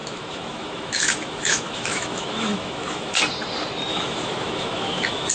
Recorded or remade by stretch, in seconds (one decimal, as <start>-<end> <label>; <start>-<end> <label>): 0.0-3.2 remade; 3.2-3.9 recorded; 3.9-5.3 remade